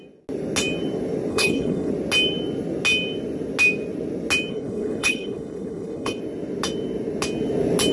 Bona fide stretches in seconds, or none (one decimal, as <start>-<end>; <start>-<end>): 0.0-1.3; 1.9-4.5; 6.2-7.9